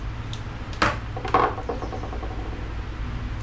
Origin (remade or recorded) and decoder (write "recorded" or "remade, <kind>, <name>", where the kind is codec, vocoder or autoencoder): recorded